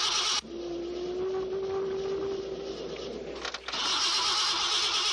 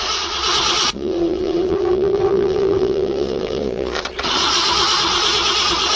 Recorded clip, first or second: first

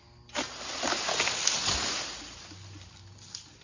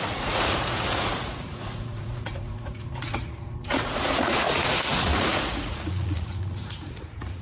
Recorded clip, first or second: first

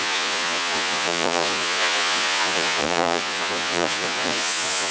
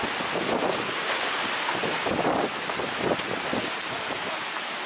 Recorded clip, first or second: second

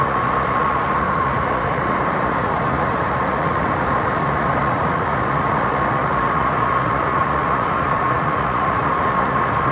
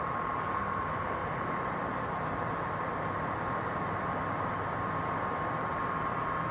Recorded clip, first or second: second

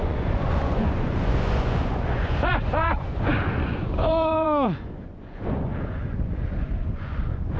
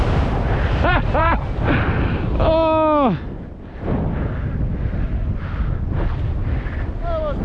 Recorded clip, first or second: second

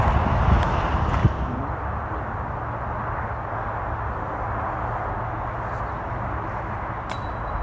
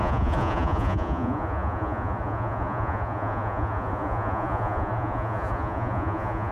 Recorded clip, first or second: first